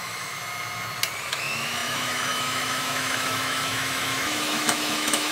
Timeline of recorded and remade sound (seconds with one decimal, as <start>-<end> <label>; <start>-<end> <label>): 0.0-0.4 remade; 0.4-1.3 recorded; 1.3-5.3 remade